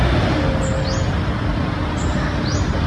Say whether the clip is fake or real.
real